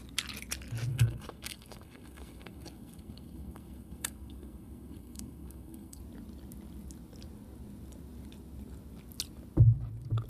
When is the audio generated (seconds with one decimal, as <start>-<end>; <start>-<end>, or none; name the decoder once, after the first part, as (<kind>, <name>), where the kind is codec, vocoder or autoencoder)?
0.9-6.0 (codec, SNAC)